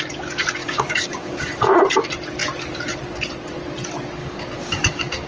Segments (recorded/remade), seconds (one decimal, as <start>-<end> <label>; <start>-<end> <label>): 0.0-0.6 recorded; 0.6-1.8 remade; 1.8-4.2 recorded; 4.2-5.3 remade

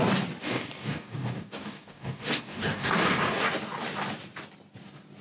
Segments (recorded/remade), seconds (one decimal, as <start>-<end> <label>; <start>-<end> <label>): 0.0-0.4 recorded; 0.4-3.5 remade; 3.5-5.2 recorded